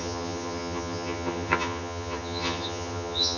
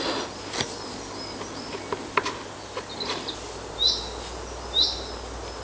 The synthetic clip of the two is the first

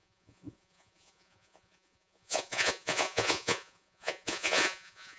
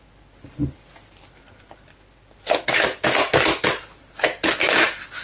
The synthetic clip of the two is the first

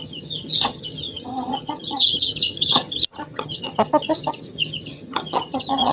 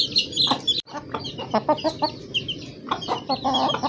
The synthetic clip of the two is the first